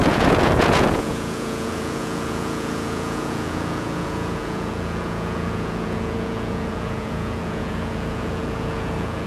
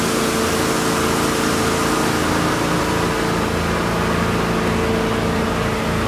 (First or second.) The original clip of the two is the second